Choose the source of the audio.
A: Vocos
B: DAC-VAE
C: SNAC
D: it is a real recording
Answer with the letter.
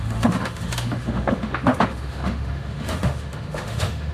B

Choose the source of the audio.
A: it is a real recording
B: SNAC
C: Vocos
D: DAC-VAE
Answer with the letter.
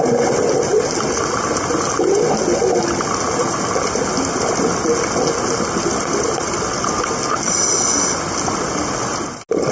A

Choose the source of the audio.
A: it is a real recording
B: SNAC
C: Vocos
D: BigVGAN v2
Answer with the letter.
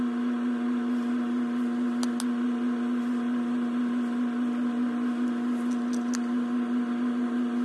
A